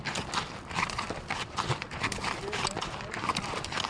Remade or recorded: recorded